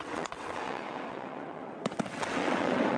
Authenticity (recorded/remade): remade